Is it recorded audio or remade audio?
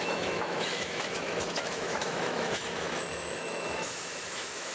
remade